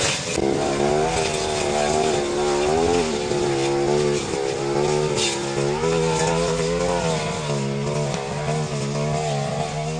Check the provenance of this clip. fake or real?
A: real